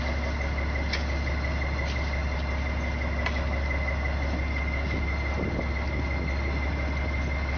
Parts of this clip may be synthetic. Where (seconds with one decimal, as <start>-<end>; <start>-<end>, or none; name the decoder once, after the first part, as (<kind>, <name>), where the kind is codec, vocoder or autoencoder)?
none